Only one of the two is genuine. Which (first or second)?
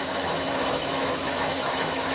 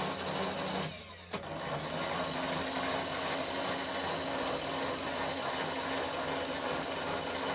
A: second